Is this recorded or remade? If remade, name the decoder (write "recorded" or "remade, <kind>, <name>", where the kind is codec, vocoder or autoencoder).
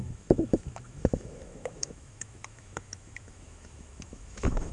remade, autoencoder, DAC-VAE